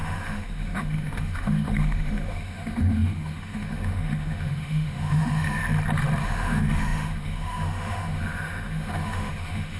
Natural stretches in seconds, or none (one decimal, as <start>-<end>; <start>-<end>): 5.6-6.2